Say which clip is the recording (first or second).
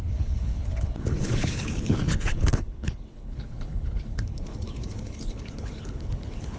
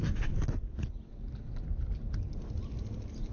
second